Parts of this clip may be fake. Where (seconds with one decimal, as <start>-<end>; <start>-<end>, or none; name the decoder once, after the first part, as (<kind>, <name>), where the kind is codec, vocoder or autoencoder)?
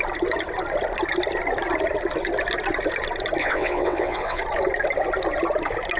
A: 3.4-4.4 (vocoder, WaveNeXt)